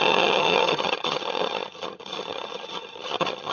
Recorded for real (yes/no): no